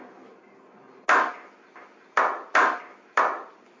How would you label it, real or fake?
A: real